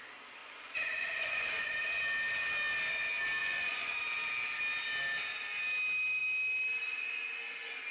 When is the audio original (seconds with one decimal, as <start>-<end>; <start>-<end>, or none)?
0.0-0.4; 1.7-3.4; 4.0-7.9